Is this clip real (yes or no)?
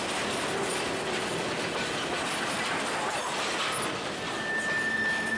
yes